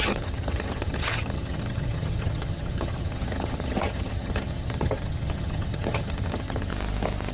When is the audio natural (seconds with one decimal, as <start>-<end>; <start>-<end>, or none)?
6.7-7.3